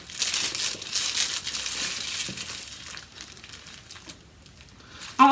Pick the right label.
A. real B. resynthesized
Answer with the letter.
A